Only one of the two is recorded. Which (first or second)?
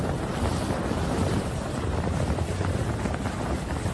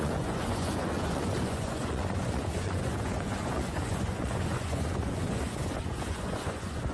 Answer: first